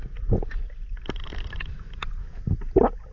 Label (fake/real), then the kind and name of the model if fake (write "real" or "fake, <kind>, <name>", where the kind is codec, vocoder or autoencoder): real